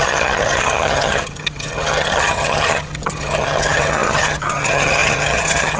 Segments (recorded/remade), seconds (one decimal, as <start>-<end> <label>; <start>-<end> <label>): 0.0-5.8 remade